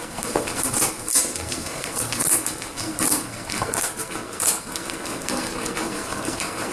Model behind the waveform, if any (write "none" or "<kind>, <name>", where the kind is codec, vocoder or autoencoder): codec, SNAC